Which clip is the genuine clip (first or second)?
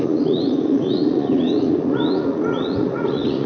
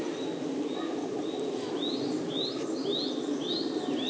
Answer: second